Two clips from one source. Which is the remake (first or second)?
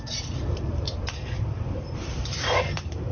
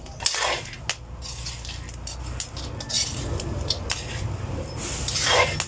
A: first